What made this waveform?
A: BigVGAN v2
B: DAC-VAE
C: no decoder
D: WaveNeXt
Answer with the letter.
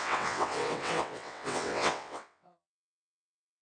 D